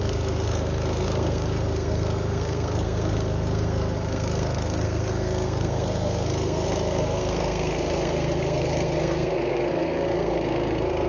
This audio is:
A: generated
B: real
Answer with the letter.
A